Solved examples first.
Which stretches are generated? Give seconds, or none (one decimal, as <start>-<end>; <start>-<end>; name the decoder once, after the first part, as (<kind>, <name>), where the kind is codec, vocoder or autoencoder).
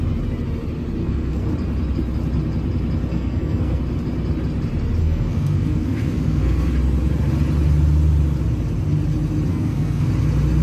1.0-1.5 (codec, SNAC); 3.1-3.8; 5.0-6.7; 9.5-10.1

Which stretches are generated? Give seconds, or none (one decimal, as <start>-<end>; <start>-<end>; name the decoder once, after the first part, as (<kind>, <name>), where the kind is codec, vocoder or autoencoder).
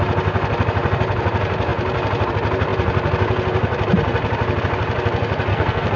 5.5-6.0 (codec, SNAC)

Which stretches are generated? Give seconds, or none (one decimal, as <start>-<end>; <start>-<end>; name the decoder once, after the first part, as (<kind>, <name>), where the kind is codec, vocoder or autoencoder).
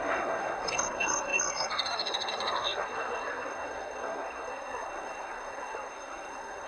0.0-6.7 (codec, SNAC)